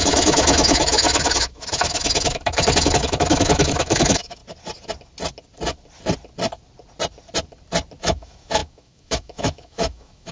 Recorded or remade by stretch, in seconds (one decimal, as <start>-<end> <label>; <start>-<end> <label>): 0.0-4.4 remade; 4.4-8.0 recorded; 8.0-10.3 remade